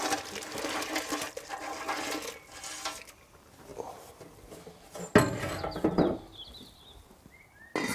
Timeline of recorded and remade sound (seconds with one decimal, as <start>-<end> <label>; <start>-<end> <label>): 0.0-7.9 recorded